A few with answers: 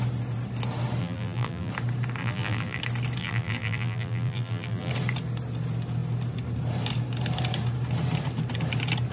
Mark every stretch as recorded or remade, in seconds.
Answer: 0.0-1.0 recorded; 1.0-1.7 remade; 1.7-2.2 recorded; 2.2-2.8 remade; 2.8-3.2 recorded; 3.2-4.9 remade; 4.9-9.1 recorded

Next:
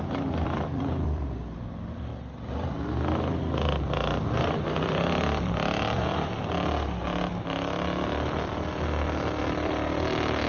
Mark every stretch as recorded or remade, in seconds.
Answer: 0.0-2.1 remade; 2.1-4.4 recorded; 4.4-6.1 remade; 6.1-9.4 recorded; 9.4-10.5 remade

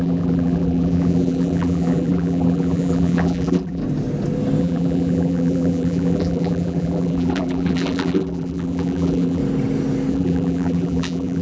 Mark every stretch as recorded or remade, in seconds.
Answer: 0.0-3.8 remade; 3.8-4.6 recorded; 4.6-9.4 remade; 9.4-10.1 recorded; 10.1-11.4 remade

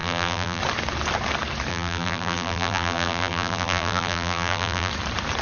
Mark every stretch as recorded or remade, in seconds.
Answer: 0.0-0.6 remade; 0.6-1.7 recorded; 1.7-4.9 remade; 4.9-5.4 recorded

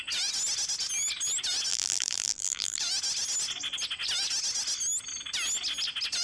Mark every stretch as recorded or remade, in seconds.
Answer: 0.0-1.7 recorded; 1.7-2.8 remade; 2.8-6.2 recorded